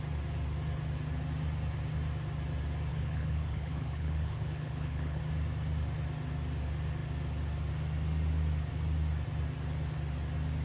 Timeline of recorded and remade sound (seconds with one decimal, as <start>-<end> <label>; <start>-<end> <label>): 0.0-2.9 recorded; 2.9-5.2 remade; 5.2-10.6 recorded